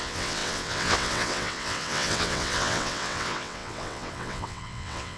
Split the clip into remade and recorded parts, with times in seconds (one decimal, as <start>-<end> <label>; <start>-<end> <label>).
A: 0.0-5.2 remade